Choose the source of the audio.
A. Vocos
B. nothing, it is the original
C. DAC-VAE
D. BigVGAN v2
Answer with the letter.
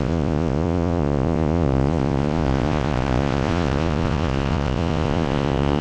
A